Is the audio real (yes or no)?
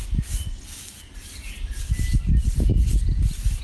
yes